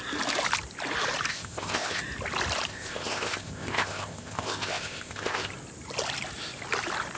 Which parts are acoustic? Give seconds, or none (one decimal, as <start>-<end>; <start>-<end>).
0.0-1.3; 2.0-2.7; 5.5-7.2